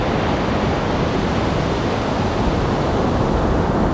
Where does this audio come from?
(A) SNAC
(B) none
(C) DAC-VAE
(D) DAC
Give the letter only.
B